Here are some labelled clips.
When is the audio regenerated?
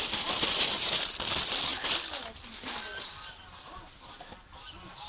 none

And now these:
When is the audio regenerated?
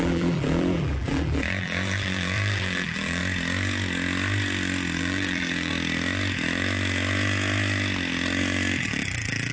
0.0-3.2 (vocoder, BigVGAN v2); 5.0-5.7; 8.8-9.5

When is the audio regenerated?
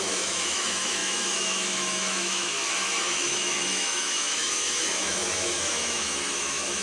0.0-6.8 (autoencoder, DAC-VAE)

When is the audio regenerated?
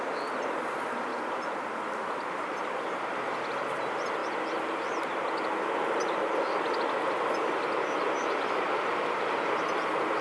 1.1-3.0 (vocoder, BigVGAN v2)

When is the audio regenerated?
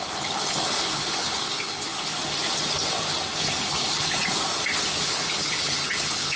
0.0-2.2 (codec, HILCodec); 3.3-4.2; 5.1-6.4